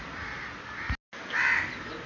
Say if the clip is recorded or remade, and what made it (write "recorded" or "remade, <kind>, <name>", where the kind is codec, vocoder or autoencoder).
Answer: recorded